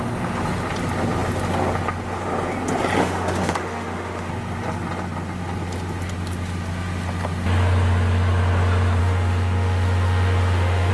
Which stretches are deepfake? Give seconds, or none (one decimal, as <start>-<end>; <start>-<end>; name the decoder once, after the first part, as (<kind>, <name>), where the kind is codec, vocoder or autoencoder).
3.0-4.3 (autoencoder, DAC-VAE); 9.0-10.9